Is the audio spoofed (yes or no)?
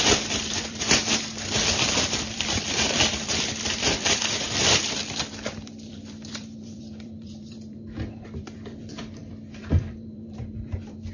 yes